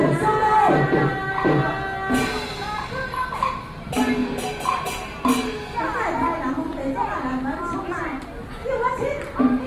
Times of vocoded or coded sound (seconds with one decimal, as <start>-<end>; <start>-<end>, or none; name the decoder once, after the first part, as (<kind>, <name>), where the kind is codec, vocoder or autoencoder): none